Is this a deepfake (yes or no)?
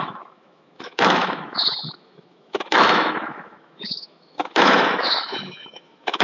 yes